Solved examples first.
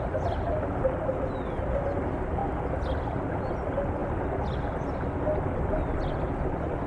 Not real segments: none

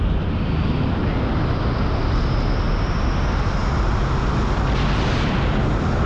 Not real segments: none

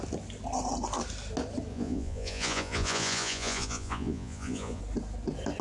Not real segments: 1.7-4.8 (vocoder, Vocos)

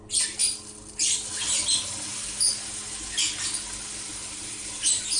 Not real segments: none

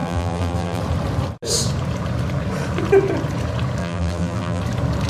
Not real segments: 0.0-0.8 (vocoder, BigVGAN v2); 3.8-4.6

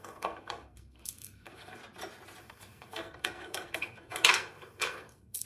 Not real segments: 0.0-1.8 (codec, SNAC); 2.4-5.5